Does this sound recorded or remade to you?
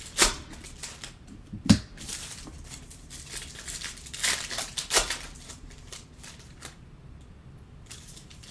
remade